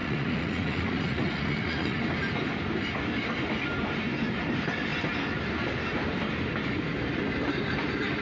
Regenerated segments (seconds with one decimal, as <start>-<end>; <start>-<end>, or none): 0.0-2.0